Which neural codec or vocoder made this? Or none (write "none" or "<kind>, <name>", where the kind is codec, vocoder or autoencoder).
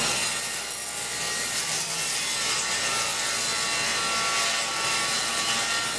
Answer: none